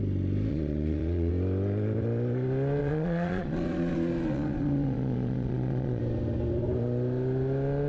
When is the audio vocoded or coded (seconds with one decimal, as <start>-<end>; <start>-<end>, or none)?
0.5-1.3; 2.8-6.0